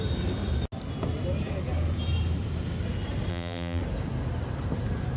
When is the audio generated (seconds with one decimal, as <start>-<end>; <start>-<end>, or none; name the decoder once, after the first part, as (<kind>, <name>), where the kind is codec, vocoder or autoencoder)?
3.3-3.8 (vocoder, BigVGAN v2)